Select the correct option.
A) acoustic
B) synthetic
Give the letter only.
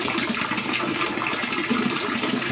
B